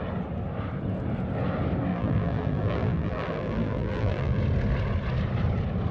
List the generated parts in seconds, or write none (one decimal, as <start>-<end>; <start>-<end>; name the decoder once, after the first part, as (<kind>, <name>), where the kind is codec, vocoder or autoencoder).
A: 1.9-4.4 (vocoder, BigVGAN v2)

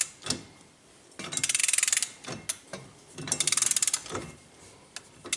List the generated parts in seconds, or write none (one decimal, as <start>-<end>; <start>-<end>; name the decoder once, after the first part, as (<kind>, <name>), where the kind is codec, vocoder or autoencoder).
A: none